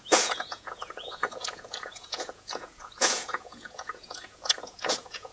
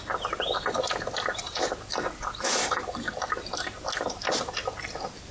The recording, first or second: second